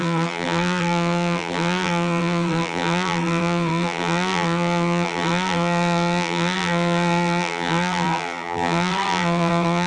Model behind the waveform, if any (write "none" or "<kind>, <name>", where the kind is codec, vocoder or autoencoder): vocoder, BigVGAN v2